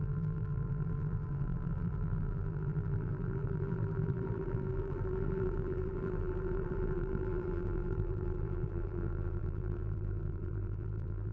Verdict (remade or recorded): remade